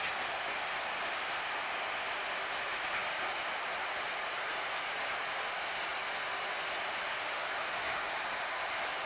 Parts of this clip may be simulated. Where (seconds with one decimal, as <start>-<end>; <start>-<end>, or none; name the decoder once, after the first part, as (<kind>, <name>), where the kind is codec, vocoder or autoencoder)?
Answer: 7.2-8.1 (autoencoder, DAC-VAE)